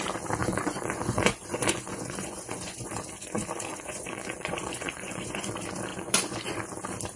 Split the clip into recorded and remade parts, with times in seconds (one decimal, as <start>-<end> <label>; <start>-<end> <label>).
0.0-0.4 recorded; 0.4-2.9 remade; 2.9-3.7 recorded; 3.7-5.5 remade; 5.5-5.9 recorded; 5.9-6.6 remade; 6.6-7.2 recorded